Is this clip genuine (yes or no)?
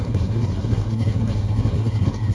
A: no